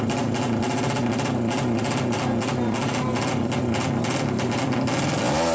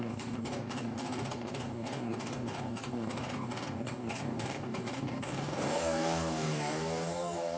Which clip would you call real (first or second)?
first